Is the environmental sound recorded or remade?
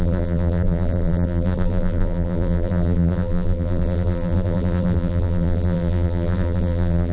remade